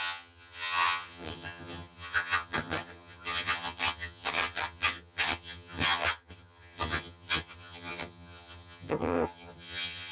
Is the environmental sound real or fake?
fake